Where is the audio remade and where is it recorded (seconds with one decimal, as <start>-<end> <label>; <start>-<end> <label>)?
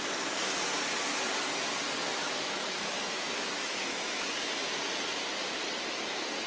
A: 0.0-2.1 recorded; 2.1-4.5 remade; 4.5-6.5 recorded